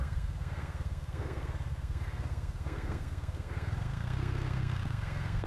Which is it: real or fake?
fake